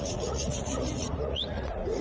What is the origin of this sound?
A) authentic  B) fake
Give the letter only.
B